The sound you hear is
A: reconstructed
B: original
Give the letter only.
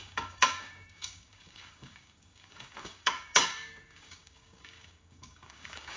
A